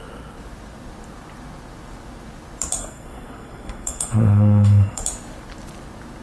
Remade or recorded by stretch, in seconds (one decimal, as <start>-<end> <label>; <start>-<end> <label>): 0.0-2.8 recorded; 2.8-5.0 remade; 5.0-6.2 recorded